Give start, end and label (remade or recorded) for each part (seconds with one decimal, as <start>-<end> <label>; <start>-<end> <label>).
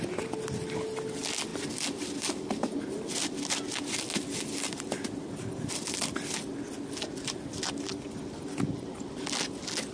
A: 0.0-9.9 recorded